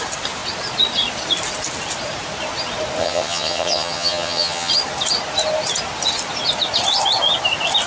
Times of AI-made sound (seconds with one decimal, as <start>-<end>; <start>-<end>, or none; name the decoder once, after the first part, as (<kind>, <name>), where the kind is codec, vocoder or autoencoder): 3.0-4.7 (vocoder, HiFi-GAN)